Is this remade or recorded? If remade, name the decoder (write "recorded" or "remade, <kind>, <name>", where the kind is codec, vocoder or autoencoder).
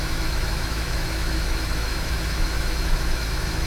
remade, autoencoder, DAC-VAE